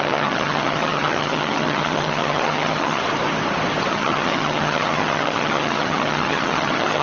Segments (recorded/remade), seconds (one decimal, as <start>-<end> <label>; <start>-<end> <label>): 0.0-3.0 remade; 3.0-3.9 recorded; 3.9-7.0 remade